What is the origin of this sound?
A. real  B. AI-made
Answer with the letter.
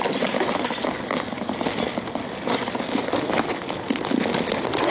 A